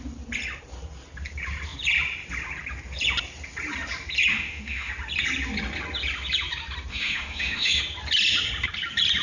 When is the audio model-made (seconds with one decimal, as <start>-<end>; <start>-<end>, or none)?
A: 4.3-4.9; 6.9-7.8